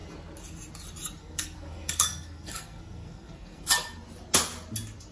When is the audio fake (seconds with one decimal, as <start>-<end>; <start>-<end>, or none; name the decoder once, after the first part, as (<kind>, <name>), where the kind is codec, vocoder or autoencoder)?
1.2-3.7 (codec, SNAC)